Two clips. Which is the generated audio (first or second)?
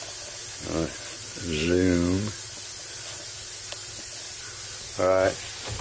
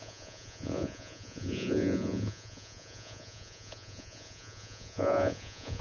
second